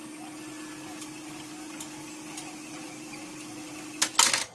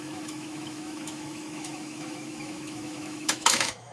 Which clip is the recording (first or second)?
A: first